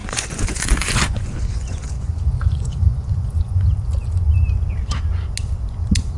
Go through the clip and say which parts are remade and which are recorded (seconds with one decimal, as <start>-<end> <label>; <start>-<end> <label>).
0.0-3.7 remade; 3.7-6.2 recorded